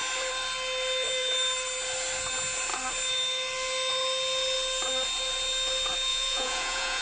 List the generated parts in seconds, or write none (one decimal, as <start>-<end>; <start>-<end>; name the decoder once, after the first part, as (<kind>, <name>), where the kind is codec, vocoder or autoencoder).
6.1-7.0 (vocoder, Vocos)